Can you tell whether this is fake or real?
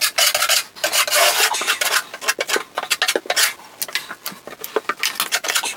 real